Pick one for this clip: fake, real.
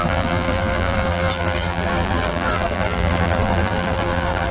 fake